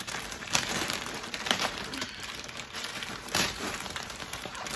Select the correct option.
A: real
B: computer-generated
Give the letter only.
B